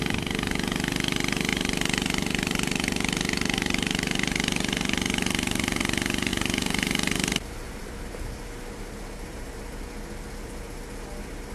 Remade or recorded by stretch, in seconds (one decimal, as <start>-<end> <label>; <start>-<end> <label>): 0.0-1.5 recorded; 1.5-5.8 remade; 5.8-6.3 recorded; 6.3-9.8 remade; 9.8-11.5 recorded